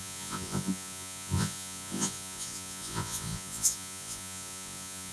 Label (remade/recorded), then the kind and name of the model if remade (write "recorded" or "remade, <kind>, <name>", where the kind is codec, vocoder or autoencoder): remade, vocoder, Vocos